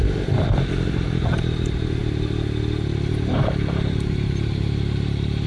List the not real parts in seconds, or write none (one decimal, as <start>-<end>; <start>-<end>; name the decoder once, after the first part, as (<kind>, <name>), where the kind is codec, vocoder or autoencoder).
0.0-2.0 (vocoder, BigVGAN v2); 3.1-5.5